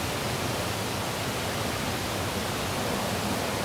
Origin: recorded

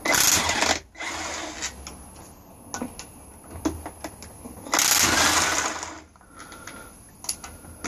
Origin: recorded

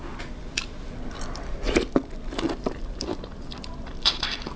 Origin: recorded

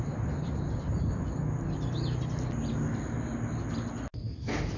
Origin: recorded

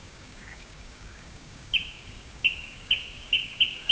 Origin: remade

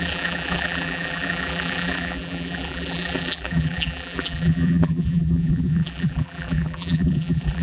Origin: remade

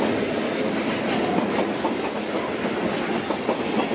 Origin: recorded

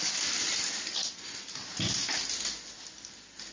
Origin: recorded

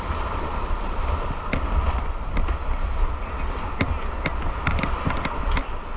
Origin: recorded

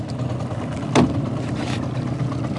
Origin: recorded